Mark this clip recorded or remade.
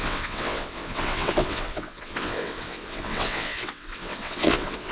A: remade